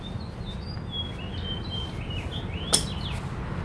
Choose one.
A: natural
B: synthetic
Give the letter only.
A